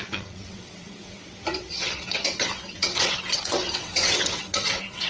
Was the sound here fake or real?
fake